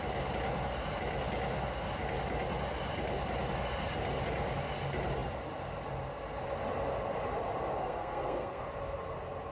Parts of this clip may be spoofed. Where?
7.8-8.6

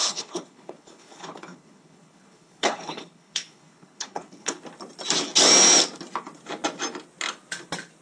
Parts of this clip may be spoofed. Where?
0.0-4.6

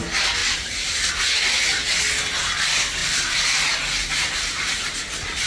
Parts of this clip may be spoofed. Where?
0.4-1.1; 3.0-5.0

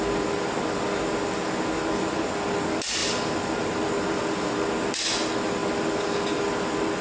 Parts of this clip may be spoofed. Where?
3.0-3.9

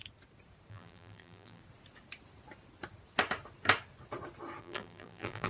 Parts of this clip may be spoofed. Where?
0.7-1.6; 4.6-5.5

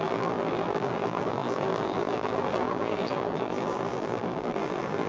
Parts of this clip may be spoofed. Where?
0.0-5.1

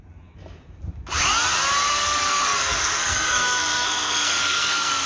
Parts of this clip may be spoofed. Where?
1.9-5.1

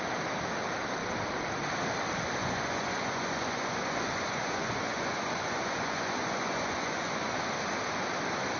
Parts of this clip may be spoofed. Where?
2.4-7.3